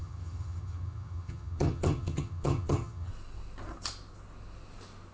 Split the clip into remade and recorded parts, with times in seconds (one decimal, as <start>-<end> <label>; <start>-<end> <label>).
0.0-3.1 remade; 3.1-5.1 recorded